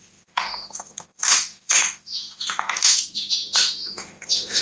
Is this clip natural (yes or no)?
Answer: no